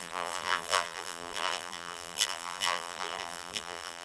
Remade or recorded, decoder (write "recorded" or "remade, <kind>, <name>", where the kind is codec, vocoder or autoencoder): remade, vocoder, BigVGAN v2